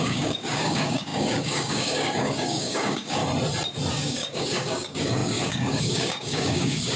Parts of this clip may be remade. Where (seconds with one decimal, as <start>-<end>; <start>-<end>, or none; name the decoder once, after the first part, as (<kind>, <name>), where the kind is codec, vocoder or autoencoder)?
0.0-3.2 (codec, DAC); 3.9-7.0